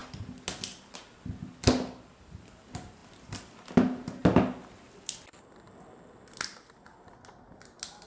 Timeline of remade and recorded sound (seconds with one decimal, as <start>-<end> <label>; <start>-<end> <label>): 0.0-8.1 recorded